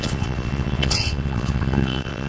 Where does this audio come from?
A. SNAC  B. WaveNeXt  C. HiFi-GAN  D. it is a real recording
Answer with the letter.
B